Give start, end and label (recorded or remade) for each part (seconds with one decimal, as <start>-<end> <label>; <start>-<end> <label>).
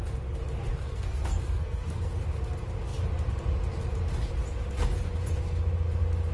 0.0-0.7 recorded; 0.7-2.1 remade; 2.1-6.3 recorded